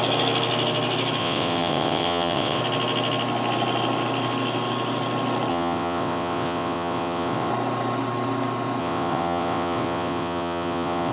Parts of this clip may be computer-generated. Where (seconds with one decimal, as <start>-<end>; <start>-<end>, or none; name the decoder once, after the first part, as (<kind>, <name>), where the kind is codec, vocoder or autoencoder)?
1.2-2.6 (vocoder, WaveNeXt); 5.5-7.5; 8.8-11.1